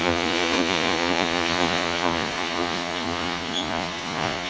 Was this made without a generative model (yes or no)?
no